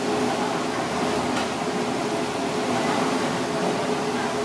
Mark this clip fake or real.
real